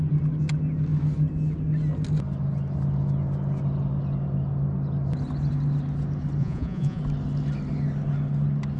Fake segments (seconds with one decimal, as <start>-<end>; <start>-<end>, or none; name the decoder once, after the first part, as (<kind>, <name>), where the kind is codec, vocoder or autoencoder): 6.4-7.0 (vocoder, Vocos)